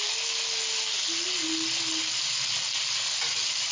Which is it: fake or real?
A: real